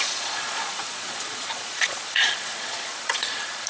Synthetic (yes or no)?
yes